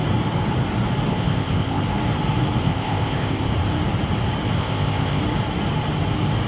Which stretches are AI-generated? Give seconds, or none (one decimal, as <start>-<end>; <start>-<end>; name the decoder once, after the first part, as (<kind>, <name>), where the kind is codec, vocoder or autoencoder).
1.1-1.8 (codec, ZipCodec); 2.6-3.5; 4.6-5.2